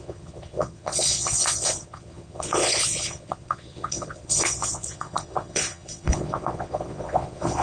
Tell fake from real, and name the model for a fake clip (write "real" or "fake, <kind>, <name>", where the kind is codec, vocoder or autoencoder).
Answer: fake, vocoder, Vocos